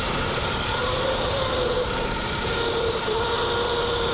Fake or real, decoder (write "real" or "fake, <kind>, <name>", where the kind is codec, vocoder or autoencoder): real